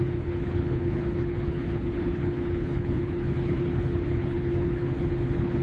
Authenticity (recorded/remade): remade